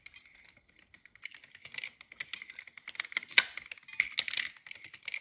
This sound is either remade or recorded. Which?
recorded